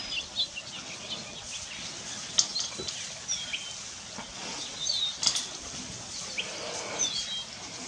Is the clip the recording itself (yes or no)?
yes